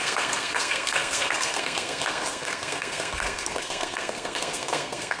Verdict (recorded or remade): remade